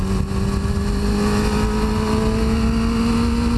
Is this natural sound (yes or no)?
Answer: yes